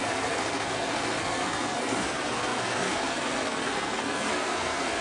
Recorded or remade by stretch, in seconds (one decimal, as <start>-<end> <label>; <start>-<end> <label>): 0.0-5.0 remade